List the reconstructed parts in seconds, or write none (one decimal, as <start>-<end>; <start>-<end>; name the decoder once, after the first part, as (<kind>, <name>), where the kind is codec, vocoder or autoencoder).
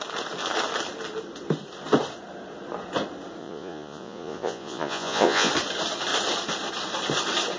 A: 3.4-5.5 (vocoder, Vocos)